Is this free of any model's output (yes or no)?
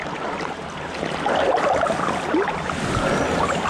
no